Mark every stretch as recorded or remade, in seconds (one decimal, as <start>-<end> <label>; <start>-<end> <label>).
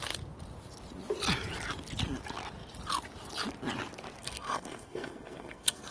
0.0-4.2 recorded; 4.2-5.9 remade